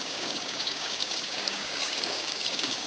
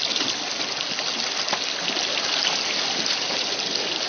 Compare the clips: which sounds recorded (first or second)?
second